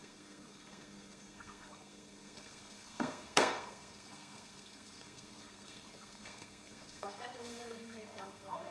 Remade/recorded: remade